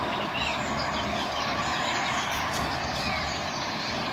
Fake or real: fake